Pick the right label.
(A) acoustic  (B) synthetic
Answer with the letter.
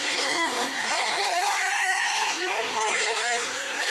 B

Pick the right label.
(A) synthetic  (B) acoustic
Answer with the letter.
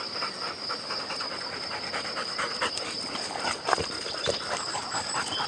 B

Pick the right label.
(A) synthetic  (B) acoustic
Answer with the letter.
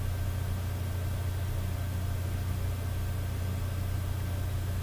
B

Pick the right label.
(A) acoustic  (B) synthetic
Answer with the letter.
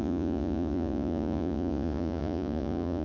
B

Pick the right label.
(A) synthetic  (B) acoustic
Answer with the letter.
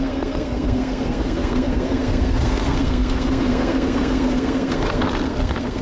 A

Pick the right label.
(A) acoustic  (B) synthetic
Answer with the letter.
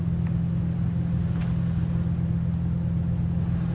A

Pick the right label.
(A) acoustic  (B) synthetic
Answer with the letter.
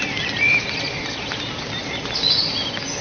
A